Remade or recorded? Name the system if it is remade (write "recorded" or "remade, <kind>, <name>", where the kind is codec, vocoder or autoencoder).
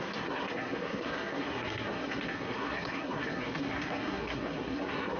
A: remade, codec, SNAC